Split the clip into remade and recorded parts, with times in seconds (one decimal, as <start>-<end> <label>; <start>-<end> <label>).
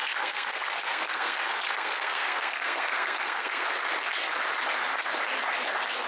0.0-3.7 remade; 3.7-6.1 recorded